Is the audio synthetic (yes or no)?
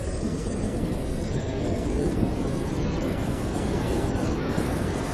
yes